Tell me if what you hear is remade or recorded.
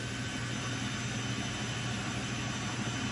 recorded